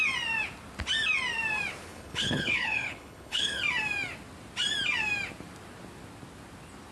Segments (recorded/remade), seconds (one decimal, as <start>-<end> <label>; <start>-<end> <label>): 0.0-1.9 recorded; 1.9-3.6 remade; 3.6-6.9 recorded